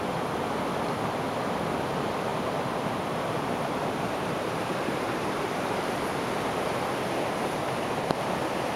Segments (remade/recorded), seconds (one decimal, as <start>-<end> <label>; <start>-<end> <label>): 0.0-2.3 recorded; 2.3-6.0 remade; 6.0-8.8 recorded